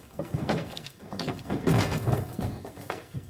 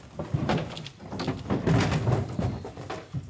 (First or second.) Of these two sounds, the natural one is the second